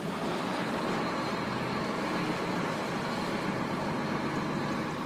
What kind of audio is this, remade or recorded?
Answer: recorded